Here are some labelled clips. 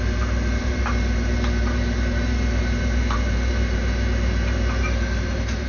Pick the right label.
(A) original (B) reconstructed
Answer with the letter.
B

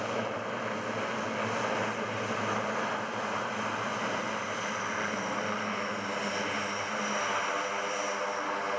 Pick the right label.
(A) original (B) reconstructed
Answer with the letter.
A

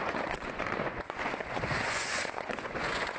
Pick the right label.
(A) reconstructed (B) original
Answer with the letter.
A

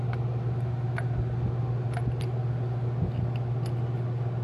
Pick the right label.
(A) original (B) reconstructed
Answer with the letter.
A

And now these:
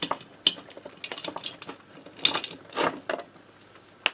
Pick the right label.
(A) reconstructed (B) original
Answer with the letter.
B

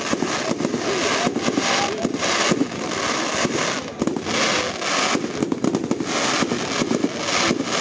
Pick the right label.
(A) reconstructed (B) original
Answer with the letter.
B